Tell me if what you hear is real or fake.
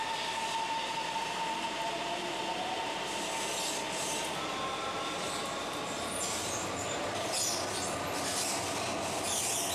real